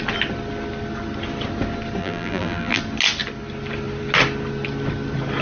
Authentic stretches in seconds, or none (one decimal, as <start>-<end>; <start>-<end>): 0.0-2.0; 2.8-5.4